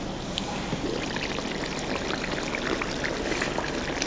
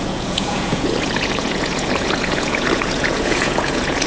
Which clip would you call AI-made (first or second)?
second